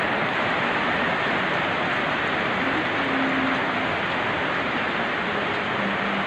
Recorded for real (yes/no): yes